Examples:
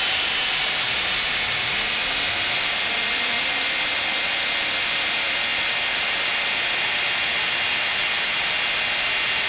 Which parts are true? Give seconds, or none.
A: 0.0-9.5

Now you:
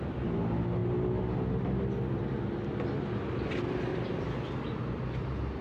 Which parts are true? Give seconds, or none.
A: 0.0-5.6